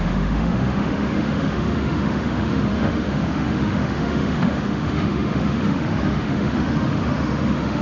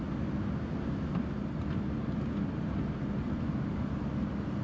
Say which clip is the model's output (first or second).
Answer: first